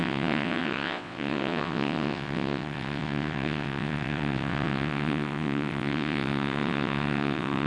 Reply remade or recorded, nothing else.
remade